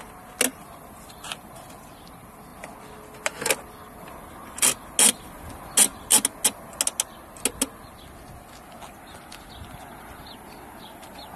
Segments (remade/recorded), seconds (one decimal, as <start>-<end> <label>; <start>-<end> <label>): 0.0-11.4 recorded